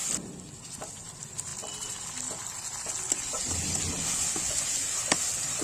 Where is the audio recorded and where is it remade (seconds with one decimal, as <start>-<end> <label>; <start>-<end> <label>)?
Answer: 0.0-0.7 remade; 0.7-5.6 recorded